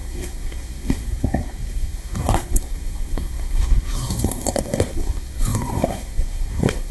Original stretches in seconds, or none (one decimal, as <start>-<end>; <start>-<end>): none